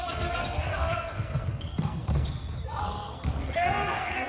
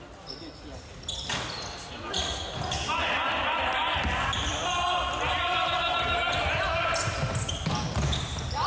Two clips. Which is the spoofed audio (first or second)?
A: first